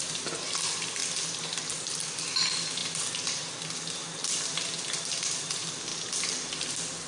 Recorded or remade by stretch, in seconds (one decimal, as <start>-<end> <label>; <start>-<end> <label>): 0.0-1.0 remade; 1.0-2.4 recorded; 2.4-2.8 remade; 2.8-5.2 recorded; 5.2-7.1 remade